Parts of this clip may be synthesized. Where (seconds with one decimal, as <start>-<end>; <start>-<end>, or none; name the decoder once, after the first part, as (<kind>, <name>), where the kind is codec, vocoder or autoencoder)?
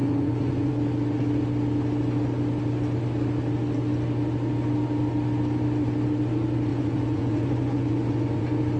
0.0-0.7 (vocoder, Vocos); 6.7-8.4